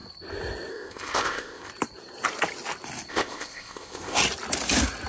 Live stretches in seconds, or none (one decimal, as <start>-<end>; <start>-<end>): 0.0-0.7; 1.7-3.1; 4.2-5.1